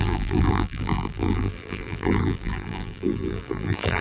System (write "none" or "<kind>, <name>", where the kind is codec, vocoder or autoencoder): vocoder, BigVGAN v2